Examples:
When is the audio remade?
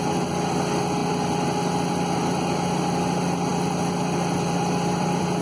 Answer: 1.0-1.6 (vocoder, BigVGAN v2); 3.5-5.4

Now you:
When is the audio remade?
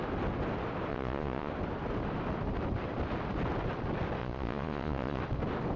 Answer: 0.9-1.5 (vocoder, Vocos); 4.2-5.2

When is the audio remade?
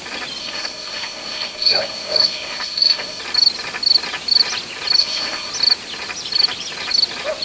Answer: 0.4-3.2 (codec, SNAC); 5.0-5.5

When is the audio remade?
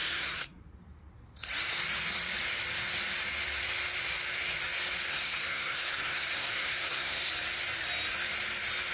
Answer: 0.0-0.6 (codec, SNAC); 5.1-7.3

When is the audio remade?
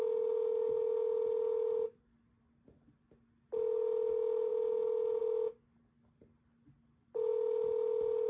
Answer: none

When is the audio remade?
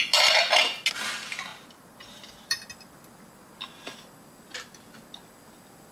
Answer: 1.5-2.7 (vocoder, BigVGAN v2)